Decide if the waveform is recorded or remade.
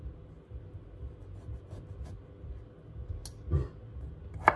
recorded